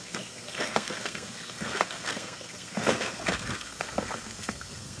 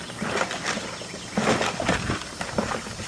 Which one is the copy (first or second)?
first